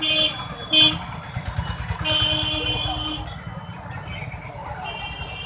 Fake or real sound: real